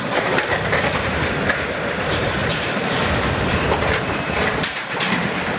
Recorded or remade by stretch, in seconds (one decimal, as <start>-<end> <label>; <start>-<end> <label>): 0.0-5.6 remade